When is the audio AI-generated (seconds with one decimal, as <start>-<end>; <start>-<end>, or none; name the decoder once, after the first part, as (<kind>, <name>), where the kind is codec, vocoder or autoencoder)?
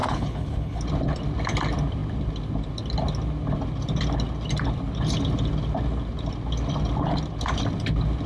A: 0.0-0.8 (codec, HILCodec)